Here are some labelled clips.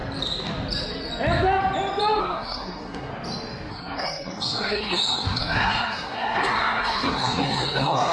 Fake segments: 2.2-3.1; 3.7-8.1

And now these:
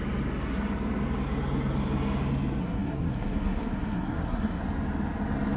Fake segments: 2.6-4.6

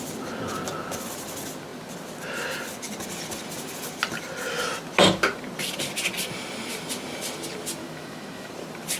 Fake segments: 7.8-8.5

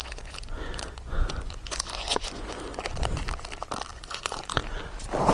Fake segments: 0.0-3.2; 3.9-4.8

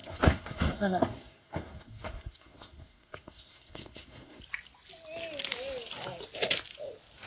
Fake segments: 0.0-4.4

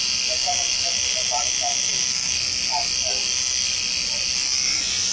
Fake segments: none